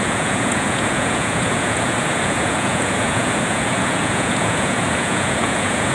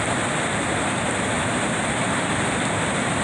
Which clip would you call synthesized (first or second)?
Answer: first